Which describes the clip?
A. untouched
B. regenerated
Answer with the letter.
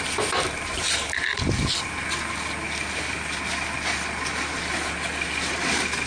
A